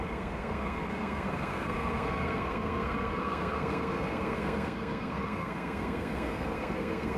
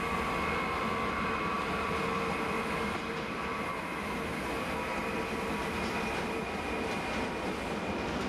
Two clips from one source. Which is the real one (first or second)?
second